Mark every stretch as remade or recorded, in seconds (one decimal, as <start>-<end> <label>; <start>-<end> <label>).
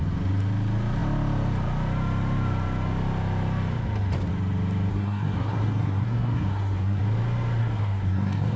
0.0-4.9 recorded; 4.9-7.0 remade; 7.0-7.6 recorded; 7.6-8.6 remade